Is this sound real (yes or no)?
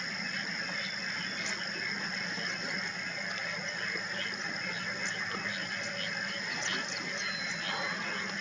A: yes